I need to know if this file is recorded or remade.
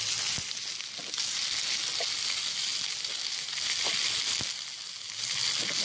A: recorded